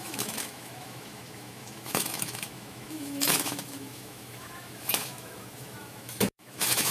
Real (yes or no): no